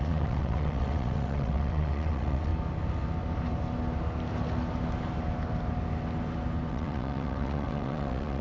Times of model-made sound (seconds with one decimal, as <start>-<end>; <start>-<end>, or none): 0.0-2.5; 6.7-8.4